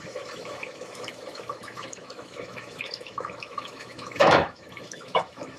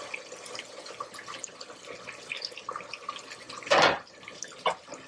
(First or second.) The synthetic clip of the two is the first